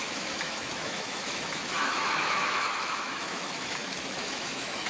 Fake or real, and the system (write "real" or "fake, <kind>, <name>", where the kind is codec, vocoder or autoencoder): fake, autoencoder, DAC-VAE